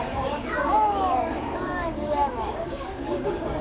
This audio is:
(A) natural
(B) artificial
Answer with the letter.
B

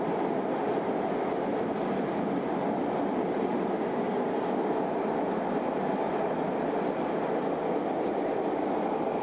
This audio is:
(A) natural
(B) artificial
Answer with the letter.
A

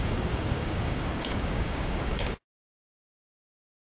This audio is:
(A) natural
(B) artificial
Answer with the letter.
B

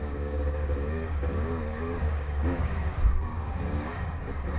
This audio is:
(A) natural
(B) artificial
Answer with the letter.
B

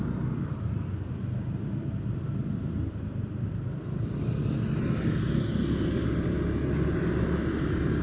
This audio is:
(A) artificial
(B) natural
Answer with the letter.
B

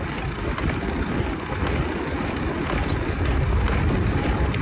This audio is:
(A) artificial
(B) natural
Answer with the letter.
B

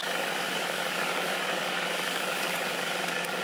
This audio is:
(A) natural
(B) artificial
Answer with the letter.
B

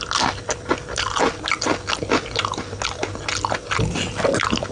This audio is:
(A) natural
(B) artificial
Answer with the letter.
A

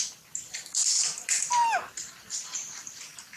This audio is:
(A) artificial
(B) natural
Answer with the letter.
B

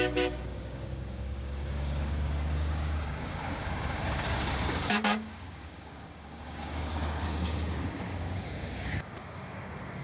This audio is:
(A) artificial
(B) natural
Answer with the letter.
A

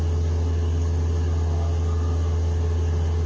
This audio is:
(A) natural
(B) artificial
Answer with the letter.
A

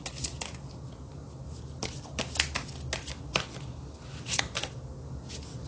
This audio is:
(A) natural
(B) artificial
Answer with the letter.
A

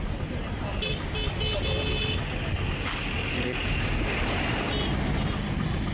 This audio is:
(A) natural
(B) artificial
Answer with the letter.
A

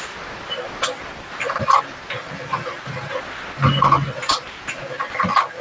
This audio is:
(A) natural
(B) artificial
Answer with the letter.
A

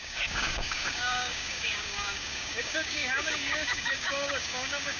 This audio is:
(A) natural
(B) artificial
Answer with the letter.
B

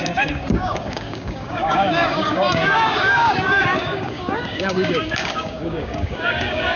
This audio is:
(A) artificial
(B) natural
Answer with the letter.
A